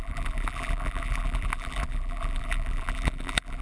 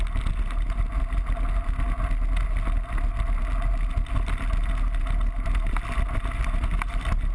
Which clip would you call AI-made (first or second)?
first